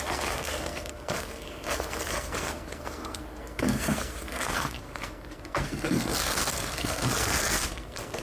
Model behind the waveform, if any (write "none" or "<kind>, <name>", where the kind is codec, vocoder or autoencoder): codec, SNAC